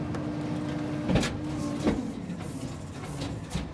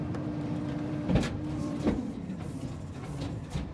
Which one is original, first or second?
first